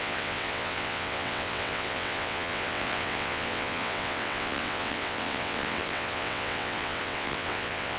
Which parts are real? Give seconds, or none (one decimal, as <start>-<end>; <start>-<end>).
none